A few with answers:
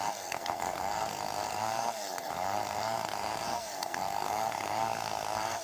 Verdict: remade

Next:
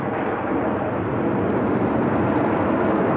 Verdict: recorded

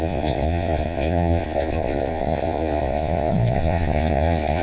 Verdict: remade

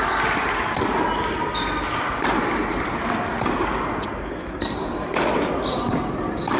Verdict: recorded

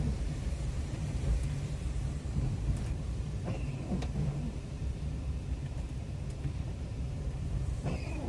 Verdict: remade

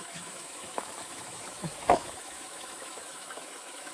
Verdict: remade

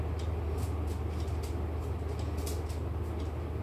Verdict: recorded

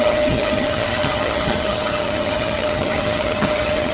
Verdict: remade